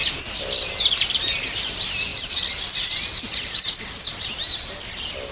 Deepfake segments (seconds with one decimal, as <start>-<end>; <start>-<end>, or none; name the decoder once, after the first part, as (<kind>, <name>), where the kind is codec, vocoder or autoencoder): 0.9-2.1 (vocoder, BigVGAN v2); 3.9-4.4